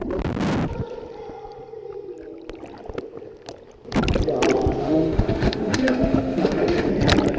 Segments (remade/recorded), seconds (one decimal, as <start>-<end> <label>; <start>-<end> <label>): 0.0-4.8 recorded; 4.8-6.9 remade; 6.9-7.4 recorded